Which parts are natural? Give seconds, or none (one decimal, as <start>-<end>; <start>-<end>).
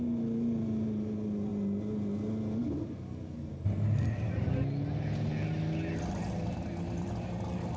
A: 0.0-7.8